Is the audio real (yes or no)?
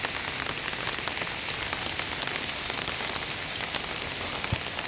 yes